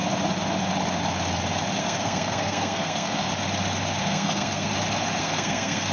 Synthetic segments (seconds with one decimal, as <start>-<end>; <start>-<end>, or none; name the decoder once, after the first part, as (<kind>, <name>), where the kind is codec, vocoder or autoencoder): 1.8-3.3 (codec, SNAC); 4.0-4.7; 5.2-5.9